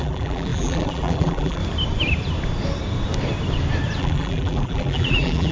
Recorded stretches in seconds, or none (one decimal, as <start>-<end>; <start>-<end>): 1.6-4.0